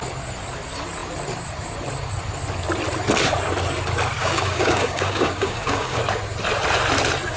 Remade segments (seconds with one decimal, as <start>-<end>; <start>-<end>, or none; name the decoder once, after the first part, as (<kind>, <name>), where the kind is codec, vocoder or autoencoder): 4.2-6.0 (codec, DAC)